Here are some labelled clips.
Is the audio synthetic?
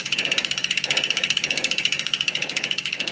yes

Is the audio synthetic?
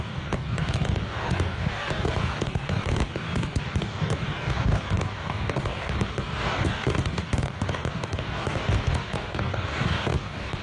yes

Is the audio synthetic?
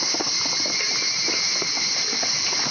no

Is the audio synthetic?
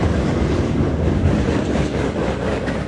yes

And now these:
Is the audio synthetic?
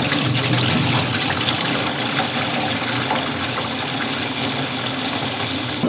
no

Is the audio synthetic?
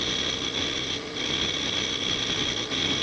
no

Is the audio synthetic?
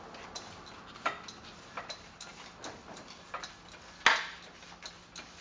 no